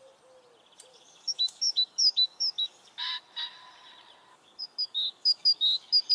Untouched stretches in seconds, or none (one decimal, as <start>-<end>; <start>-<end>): 0.0-0.9; 3.2-4.3